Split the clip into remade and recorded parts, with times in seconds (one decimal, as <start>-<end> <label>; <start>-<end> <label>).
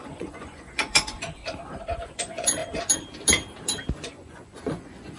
0.0-1.4 remade; 1.4-2.0 recorded; 2.0-2.6 remade; 2.6-3.9 recorded; 3.9-5.2 remade